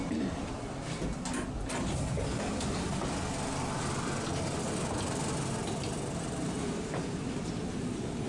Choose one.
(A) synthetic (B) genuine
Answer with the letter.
B